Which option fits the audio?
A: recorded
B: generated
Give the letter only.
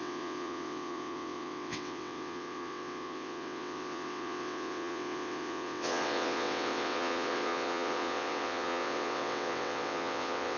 B